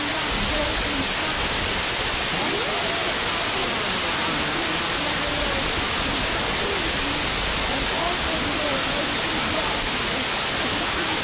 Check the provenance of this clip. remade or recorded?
recorded